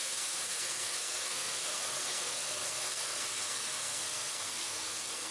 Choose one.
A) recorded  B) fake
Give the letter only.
B